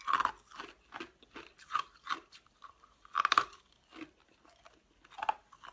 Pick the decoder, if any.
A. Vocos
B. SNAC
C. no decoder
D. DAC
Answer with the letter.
C